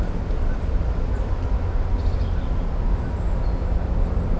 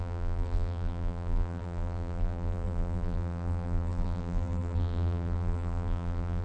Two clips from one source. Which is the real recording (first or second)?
first